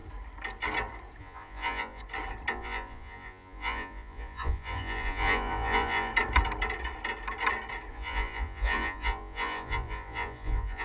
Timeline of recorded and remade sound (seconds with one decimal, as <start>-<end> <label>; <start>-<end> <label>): 0.0-1.2 recorded; 1.2-2.0 remade; 2.0-2.5 recorded; 2.5-6.1 remade; 6.1-7.9 recorded; 7.9-10.8 remade